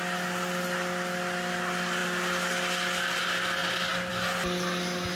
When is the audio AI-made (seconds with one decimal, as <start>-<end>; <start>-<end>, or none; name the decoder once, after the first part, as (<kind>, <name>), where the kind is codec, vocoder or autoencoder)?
none